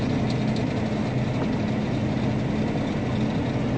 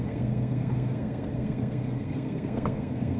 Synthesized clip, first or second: second